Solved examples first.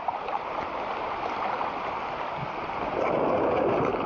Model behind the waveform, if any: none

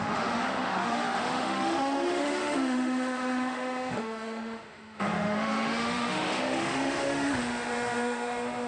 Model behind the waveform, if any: autoencoder, DAC-VAE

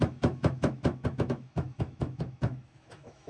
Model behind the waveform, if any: autoencoder, DAC-VAE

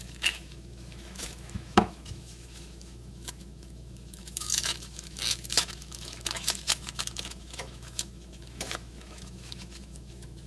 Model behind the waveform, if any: autoencoder, DAC-VAE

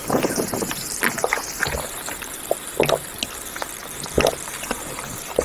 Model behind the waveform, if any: none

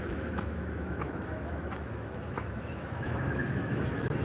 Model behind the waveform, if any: autoencoder, DAC-VAE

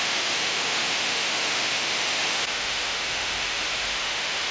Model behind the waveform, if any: autoencoder, DAC-VAE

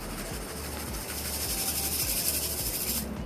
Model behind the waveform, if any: none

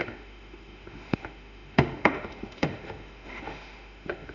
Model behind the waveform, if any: autoencoder, DAC-VAE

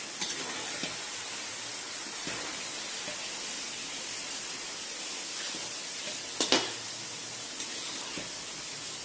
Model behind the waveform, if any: none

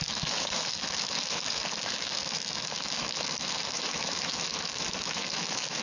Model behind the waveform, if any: autoencoder, DAC-VAE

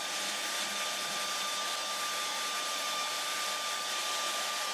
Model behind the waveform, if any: none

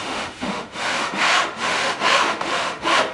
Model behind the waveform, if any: autoencoder, DAC-VAE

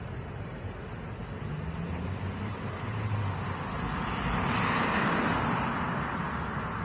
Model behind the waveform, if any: none